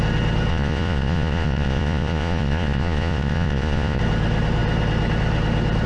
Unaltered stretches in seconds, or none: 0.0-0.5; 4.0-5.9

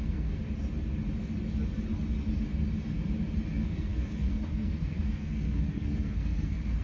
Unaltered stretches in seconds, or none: 0.4-3.5

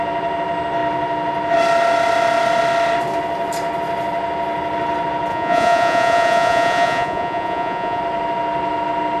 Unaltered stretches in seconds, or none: 0.0-5.3; 8.0-9.2

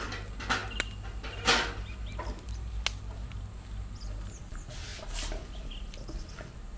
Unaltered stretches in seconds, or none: 0.0-6.8